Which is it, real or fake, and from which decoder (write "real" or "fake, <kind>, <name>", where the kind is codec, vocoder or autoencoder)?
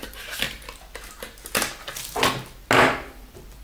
real